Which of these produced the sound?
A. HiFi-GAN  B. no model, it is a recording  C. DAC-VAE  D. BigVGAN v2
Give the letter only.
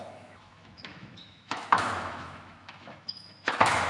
C